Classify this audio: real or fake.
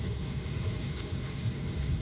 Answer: fake